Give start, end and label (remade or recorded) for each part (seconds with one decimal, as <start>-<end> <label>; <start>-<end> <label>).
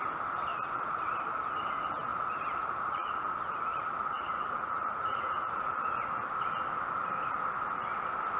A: 0.0-0.5 recorded; 0.5-1.1 remade; 1.1-2.1 recorded; 2.1-3.2 remade; 3.2-3.7 recorded; 3.7-5.7 remade; 5.7-8.4 recorded